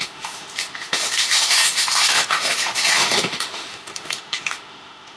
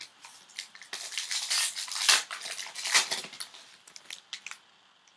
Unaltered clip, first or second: second